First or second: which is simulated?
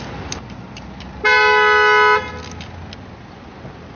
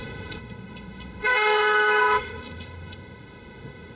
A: second